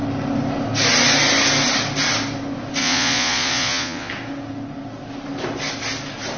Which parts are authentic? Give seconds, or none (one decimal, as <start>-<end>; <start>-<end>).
0.0-2.8; 4.1-6.4